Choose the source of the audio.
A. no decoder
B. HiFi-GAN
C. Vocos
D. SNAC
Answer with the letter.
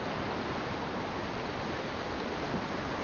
A